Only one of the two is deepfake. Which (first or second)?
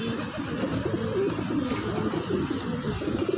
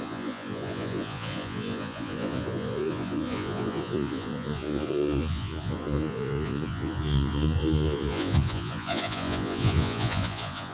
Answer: second